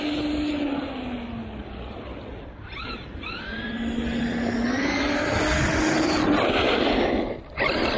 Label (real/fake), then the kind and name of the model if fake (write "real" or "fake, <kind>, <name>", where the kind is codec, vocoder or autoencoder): real